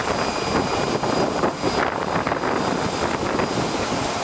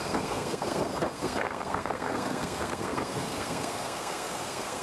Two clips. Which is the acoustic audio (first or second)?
first